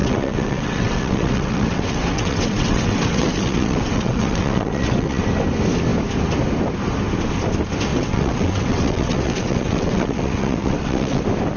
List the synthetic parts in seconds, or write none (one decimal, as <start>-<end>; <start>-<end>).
0.0-5.2; 7.9-11.2